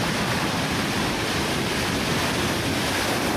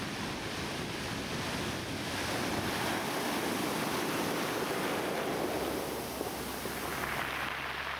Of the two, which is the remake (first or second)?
first